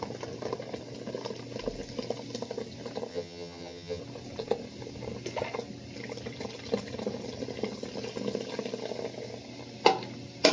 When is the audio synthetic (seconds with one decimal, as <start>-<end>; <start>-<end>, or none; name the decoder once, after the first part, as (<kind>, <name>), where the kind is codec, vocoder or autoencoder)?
3.1-4.0 (vocoder, HiFi-GAN)